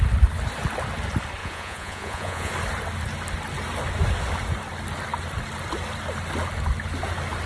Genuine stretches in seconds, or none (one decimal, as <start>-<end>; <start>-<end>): 0.0-1.4; 2.5-7.5